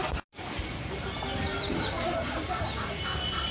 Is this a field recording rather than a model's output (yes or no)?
yes